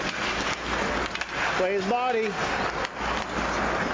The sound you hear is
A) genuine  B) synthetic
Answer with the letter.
A